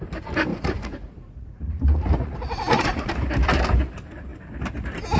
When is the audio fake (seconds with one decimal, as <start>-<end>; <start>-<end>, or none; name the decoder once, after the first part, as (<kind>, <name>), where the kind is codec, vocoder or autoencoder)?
0.5-3.1 (vocoder, Vocos)